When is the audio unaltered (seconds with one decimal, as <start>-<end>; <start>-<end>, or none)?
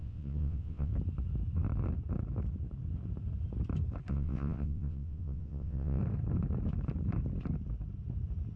0.9-4.1; 6.0-8.6